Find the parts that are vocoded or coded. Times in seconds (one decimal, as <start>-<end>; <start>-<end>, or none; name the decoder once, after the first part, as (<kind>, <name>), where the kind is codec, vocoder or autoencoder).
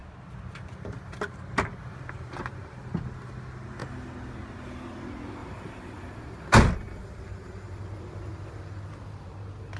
5.4-8.8 (vocoder, BigVGAN v2)